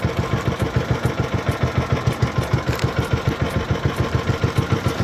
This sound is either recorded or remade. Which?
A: recorded